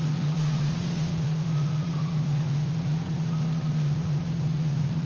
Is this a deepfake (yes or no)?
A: yes